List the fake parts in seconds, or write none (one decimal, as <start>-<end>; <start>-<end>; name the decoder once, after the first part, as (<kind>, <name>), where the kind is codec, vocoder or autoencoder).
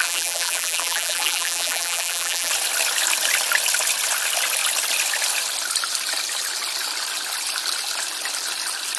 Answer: 0.0-2.5 (vocoder, BigVGAN v2)